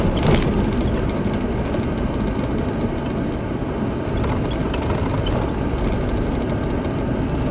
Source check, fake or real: real